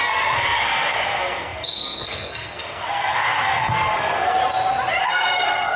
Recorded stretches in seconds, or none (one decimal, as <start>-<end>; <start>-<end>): 4.4-5.0